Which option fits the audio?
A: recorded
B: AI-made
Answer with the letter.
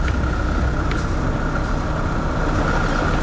A